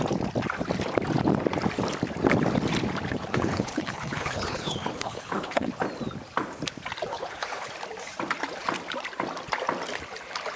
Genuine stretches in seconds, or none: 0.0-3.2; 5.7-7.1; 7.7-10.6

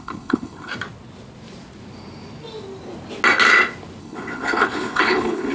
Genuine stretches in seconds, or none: 0.7-4.0

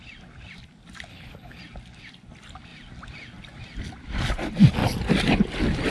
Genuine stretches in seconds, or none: 0.0-1.1; 1.6-5.9

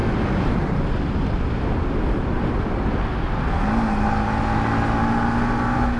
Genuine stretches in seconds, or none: 0.0-6.0

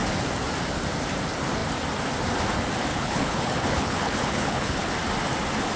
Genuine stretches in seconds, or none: 0.0-2.9; 4.9-5.8

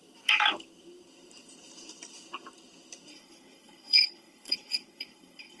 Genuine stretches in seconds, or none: 0.0-3.1

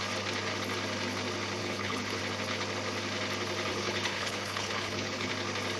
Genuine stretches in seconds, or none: 0.0-1.6; 2.2-3.7; 5.3-5.8

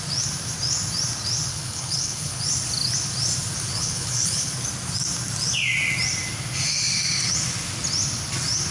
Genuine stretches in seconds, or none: 0.0-1.5; 2.4-3.7; 4.5-8.7